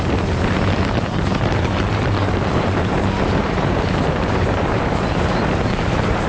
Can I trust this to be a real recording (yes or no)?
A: no